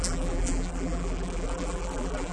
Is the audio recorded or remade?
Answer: remade